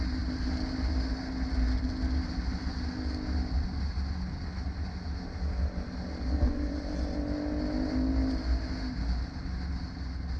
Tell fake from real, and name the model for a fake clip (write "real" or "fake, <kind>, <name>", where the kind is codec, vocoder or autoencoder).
real